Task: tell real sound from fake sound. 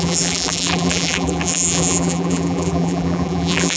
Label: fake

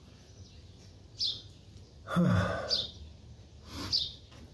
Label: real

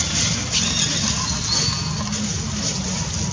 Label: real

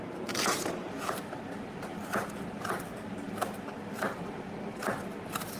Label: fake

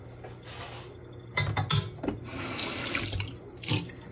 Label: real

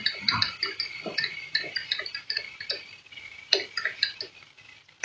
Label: real